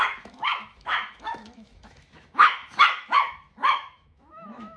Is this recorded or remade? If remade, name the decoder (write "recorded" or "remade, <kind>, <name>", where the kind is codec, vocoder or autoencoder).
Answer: remade, autoencoder, DAC-VAE